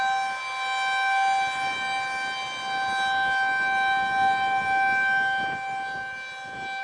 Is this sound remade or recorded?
recorded